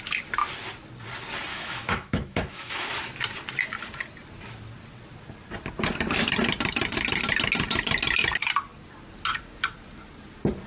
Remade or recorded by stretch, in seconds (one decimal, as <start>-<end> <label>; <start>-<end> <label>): 0.0-1.5 recorded; 1.5-2.9 remade; 2.9-10.7 recorded